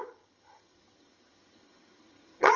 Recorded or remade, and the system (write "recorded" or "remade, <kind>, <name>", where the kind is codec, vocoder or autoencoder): remade, vocoder, HiFi-GAN